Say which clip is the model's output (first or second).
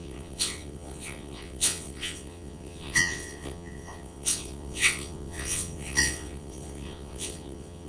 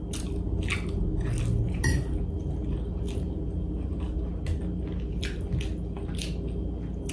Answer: first